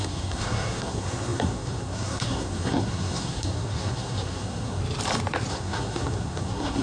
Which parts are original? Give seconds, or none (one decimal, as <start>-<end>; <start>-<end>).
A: 4.8-5.5